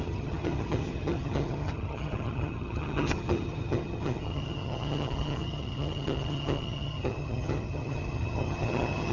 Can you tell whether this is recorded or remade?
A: remade